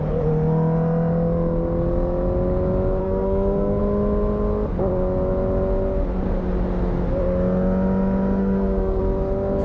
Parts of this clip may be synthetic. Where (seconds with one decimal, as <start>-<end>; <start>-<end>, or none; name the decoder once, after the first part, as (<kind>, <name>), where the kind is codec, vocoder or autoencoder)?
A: 3.0-3.8 (codec, SNAC); 8.4-9.0